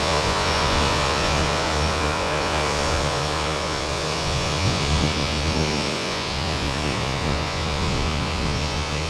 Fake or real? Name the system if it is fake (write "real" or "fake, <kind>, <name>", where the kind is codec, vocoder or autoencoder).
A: fake, vocoder, Vocos